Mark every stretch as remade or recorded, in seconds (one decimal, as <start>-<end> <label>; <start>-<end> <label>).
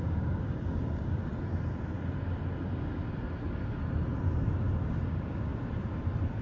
0.0-1.3 remade; 1.3-5.1 recorded; 5.1-5.5 remade; 5.5-6.4 recorded